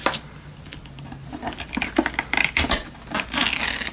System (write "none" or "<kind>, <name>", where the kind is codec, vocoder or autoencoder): none